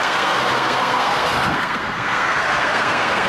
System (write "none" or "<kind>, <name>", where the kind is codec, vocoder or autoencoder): codec, SNAC